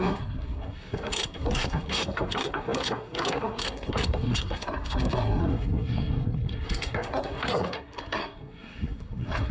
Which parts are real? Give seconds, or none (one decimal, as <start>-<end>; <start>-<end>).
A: none